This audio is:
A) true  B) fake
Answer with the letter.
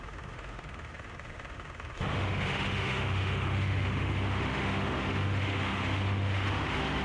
B